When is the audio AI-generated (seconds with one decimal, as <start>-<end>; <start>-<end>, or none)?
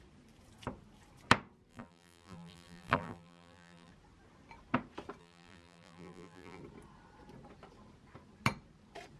1.7-3.9; 5.2-6.6